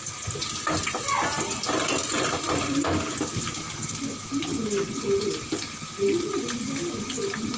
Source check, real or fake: real